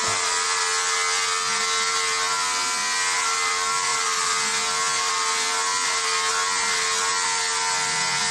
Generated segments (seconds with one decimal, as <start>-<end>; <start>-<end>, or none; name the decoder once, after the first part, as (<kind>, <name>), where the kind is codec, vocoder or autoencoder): none